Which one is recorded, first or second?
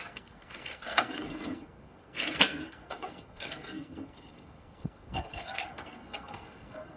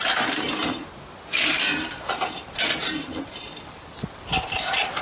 second